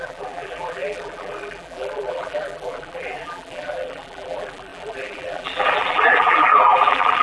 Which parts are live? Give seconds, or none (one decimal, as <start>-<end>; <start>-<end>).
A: none